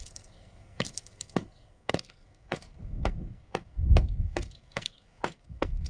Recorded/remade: remade